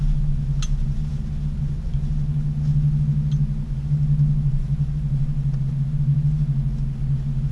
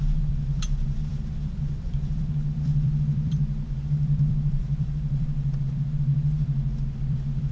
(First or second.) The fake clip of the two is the second